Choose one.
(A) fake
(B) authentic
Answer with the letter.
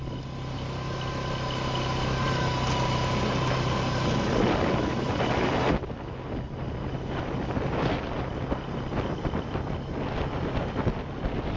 B